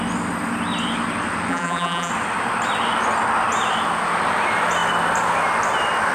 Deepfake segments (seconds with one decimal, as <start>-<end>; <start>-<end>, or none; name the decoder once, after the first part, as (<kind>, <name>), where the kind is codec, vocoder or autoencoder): 1.5-2.1 (vocoder, BigVGAN v2)

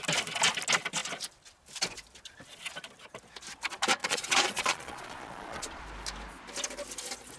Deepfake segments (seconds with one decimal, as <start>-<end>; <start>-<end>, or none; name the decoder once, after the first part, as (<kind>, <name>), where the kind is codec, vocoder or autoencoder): 4.0-5.8 (vocoder, Vocos)